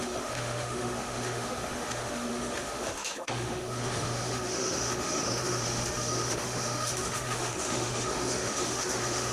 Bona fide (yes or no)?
no